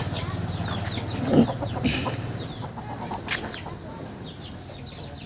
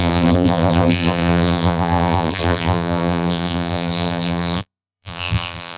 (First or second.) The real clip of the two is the first